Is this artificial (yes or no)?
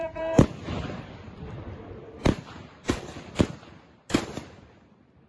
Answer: yes